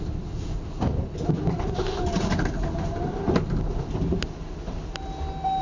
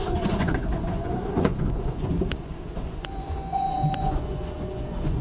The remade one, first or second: second